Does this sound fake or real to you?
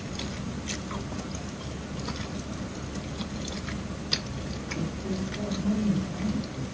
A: real